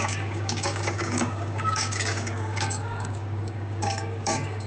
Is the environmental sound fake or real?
fake